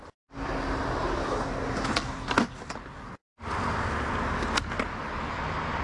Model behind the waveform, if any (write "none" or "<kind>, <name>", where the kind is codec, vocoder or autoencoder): none